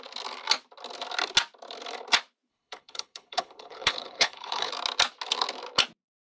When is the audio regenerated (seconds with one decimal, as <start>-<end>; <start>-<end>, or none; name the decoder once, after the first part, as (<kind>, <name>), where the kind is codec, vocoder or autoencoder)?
2.5-4.7 (codec, HILCodec)